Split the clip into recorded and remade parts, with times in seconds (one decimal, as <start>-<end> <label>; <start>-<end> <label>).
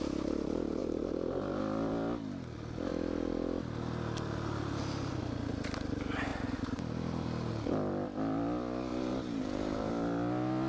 0.0-0.8 recorded; 0.8-1.6 remade; 1.6-8.9 recorded; 8.9-9.9 remade; 9.9-10.7 recorded